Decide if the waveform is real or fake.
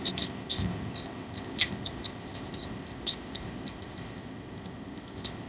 fake